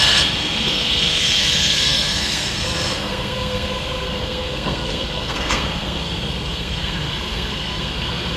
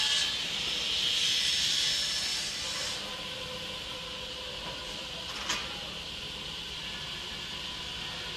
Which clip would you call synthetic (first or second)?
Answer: first